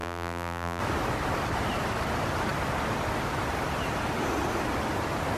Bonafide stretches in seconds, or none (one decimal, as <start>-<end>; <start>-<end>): 0.8-5.4